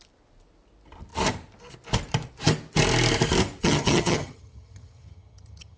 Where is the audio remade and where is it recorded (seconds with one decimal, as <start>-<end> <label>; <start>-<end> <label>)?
0.0-3.6 recorded; 3.6-5.8 remade